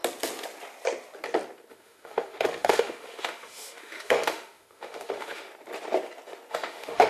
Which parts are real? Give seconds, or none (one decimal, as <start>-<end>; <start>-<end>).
0.0-1.7; 5.5-6.5